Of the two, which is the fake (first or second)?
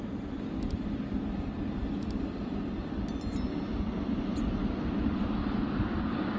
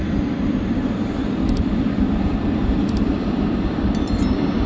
second